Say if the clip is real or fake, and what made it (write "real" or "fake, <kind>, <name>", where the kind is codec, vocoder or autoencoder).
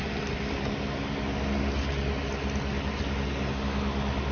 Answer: real